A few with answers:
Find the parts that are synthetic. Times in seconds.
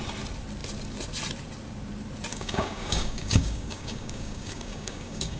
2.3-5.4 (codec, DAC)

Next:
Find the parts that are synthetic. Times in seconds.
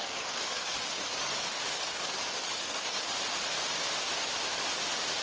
0.0-3.1 (codec, DAC)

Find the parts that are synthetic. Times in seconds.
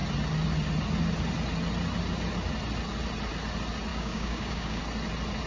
3.9-4.8 (codec, DAC)